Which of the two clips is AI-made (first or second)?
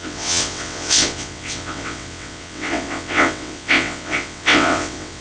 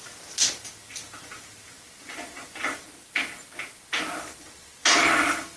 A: first